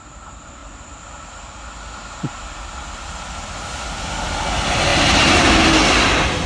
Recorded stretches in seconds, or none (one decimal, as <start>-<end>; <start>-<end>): 0.0-6.5